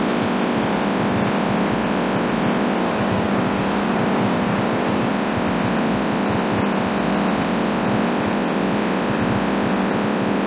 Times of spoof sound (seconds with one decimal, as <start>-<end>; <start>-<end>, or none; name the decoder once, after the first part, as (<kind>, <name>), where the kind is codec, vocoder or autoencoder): 2.8-5.1 (codec, DAC)